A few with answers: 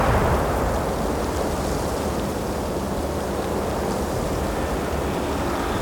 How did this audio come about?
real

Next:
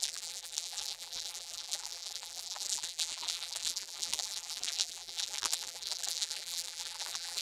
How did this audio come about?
fake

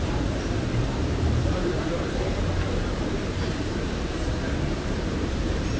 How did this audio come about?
fake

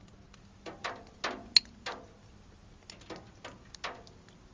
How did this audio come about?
real